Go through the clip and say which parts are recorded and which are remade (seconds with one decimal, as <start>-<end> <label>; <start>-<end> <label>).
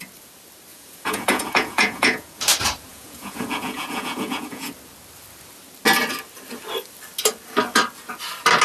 0.0-0.7 recorded; 0.7-2.4 remade; 2.4-2.9 recorded; 2.9-4.7 remade; 4.7-8.6 recorded